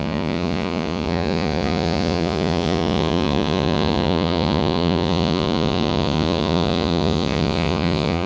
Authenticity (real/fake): fake